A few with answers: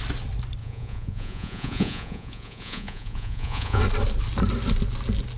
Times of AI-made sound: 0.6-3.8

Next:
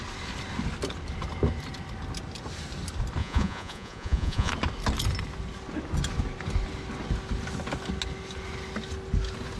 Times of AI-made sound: 3.2-4.5

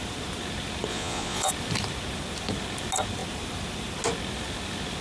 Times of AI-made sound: 0.9-1.5

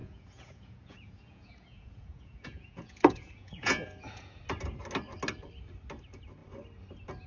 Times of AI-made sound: 0.0-4.4

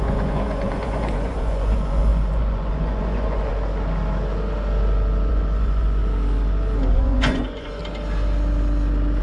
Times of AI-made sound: 0.0-3.5; 5.3-6.0; 6.9-7.8

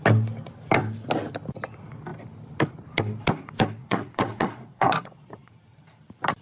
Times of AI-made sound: 3.8-5.5

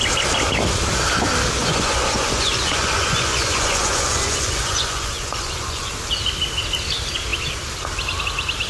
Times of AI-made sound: 1.6-5.9

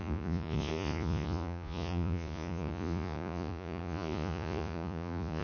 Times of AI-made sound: 0.0-5.4